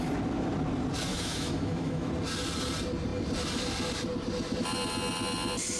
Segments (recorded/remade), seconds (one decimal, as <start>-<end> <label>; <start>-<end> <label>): 0.0-1.1 recorded; 1.1-2.1 remade; 2.1-5.8 recorded